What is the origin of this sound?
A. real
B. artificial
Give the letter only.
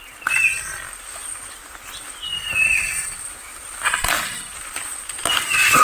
A